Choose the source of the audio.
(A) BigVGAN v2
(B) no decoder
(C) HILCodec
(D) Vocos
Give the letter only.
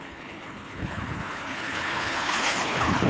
C